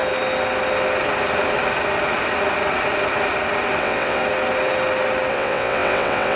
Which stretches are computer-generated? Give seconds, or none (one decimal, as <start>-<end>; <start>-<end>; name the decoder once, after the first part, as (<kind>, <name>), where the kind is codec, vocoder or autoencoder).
3.8-4.2 (vocoder, WaveNeXt); 5.3-6.4